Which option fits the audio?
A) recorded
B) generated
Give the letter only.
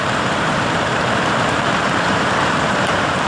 B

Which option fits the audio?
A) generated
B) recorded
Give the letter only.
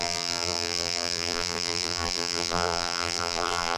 A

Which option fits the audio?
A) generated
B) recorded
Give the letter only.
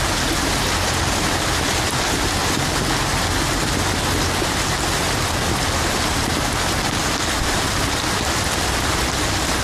B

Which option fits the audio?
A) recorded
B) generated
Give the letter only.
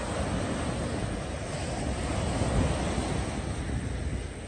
A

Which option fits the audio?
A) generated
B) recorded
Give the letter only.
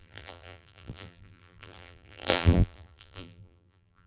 A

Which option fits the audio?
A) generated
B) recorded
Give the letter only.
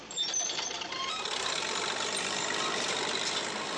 A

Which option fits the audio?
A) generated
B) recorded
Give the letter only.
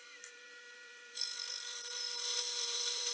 A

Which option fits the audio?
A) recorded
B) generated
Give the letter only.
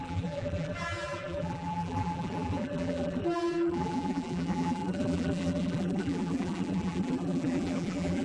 B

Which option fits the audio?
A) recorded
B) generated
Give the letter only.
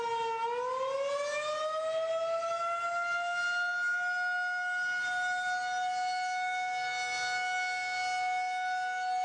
A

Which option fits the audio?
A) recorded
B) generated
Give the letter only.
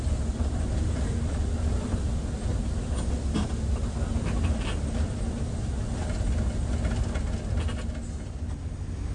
A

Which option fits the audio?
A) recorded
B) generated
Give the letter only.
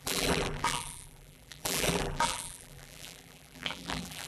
B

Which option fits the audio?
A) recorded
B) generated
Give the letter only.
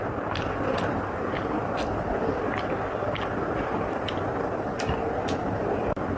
A